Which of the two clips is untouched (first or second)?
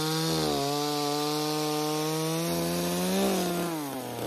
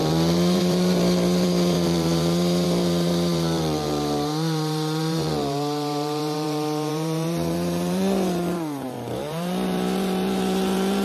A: first